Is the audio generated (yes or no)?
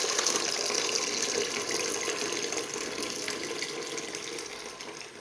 no